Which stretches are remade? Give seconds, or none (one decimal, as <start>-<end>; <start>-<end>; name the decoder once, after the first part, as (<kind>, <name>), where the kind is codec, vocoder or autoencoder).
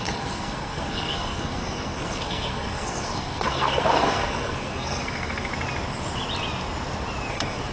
0.0-5.5 (codec, SNAC); 7.3-7.7